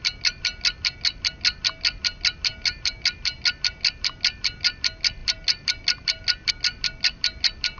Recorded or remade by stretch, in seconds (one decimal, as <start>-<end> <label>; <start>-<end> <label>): 0.0-7.8 recorded